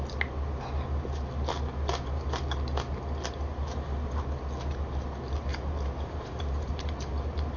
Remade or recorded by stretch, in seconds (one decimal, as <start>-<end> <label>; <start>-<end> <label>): 0.0-5.5 recorded; 5.5-7.6 remade